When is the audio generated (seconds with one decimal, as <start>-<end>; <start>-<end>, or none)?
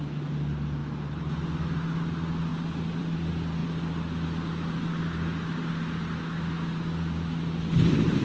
none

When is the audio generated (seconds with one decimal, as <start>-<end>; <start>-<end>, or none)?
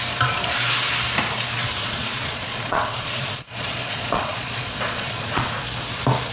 1.8-5.6